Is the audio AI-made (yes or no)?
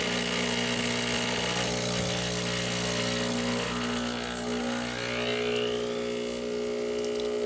no